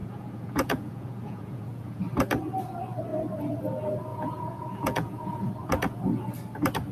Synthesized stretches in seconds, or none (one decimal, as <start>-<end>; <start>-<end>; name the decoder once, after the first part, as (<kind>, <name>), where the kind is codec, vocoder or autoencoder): 0.0-2.0 (vocoder, Vocos); 4.1-5.5